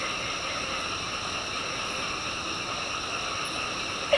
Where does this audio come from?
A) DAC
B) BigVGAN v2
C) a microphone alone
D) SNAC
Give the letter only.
C